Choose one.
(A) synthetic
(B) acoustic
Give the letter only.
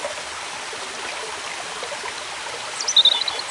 B